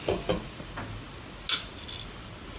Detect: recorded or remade recorded